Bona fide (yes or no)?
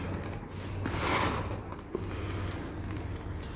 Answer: yes